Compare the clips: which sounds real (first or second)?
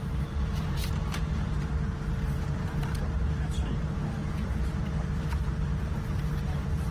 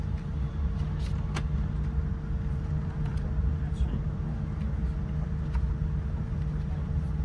second